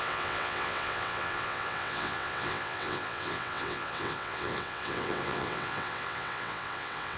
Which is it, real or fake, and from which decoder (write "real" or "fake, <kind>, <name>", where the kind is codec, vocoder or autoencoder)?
fake, vocoder, WaveNeXt